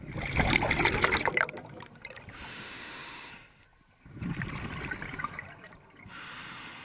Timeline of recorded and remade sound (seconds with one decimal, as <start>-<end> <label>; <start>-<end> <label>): 0.0-2.5 recorded; 2.5-3.3 remade; 3.3-6.8 recorded